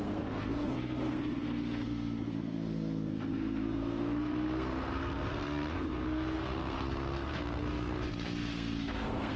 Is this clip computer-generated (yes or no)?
yes